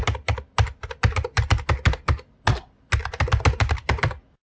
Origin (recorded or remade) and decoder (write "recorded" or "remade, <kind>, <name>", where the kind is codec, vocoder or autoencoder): recorded